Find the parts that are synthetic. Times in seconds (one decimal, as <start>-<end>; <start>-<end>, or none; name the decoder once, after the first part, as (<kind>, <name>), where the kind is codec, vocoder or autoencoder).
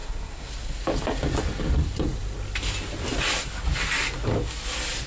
0.0-0.5 (codec, SNAC)